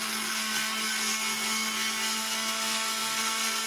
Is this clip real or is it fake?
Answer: fake